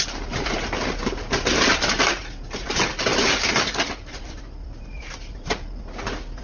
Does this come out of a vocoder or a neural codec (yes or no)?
no